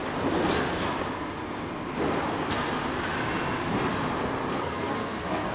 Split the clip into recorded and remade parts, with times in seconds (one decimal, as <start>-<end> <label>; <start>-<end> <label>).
0.0-4.5 recorded; 4.5-5.5 remade